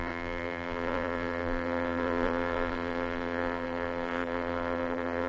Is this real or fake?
fake